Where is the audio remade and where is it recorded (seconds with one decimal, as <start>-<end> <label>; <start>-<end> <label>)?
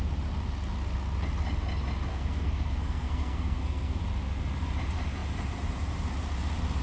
0.0-2.1 recorded; 2.1-4.0 remade; 4.0-6.8 recorded